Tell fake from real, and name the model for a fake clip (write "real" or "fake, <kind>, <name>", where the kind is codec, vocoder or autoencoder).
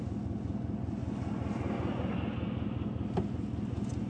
real